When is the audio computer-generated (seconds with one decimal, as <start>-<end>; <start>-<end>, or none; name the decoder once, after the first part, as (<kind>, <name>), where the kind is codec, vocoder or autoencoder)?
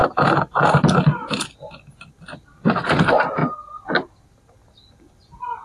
3.0-3.4 (vocoder, BigVGAN v2); 4.9-5.6